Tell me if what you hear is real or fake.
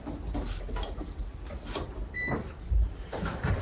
real